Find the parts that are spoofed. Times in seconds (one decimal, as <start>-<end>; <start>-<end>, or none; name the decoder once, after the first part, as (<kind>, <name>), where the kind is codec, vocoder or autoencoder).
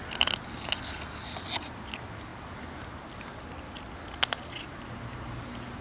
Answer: none